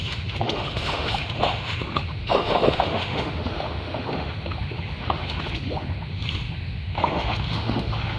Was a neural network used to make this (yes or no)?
yes